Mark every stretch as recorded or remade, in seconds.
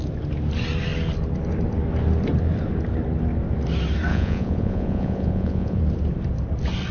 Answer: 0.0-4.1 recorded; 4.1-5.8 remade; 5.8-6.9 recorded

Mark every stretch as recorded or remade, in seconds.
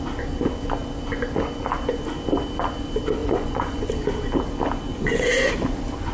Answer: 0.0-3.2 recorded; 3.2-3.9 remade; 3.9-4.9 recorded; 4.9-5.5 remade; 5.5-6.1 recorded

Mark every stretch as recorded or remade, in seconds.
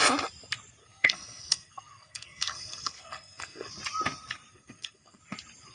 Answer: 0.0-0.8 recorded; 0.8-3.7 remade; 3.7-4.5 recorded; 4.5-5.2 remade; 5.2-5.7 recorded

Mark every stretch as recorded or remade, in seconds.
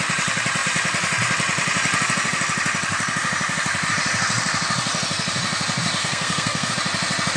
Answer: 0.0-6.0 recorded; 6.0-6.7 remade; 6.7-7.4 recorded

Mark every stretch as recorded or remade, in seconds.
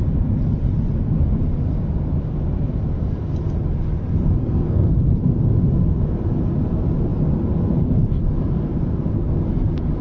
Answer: 0.0-4.4 recorded; 4.4-4.9 remade; 4.9-10.0 recorded